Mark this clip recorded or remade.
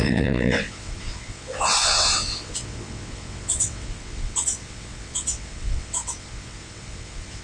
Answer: remade